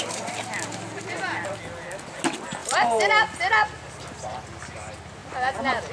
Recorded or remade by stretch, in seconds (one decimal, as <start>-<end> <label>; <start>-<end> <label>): 0.0-2.6 recorded; 2.6-3.4 remade; 3.4-5.9 recorded